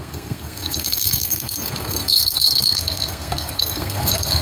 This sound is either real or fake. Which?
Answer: fake